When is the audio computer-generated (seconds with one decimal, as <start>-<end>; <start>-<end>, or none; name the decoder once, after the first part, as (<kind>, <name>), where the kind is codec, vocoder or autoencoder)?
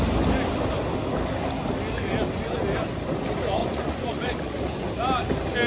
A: 3.6-4.9 (vocoder, Vocos)